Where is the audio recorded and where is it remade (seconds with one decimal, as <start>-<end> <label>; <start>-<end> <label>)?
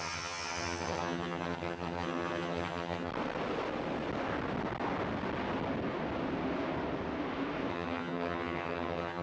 0.0-3.1 remade; 3.1-7.7 recorded; 7.7-9.2 remade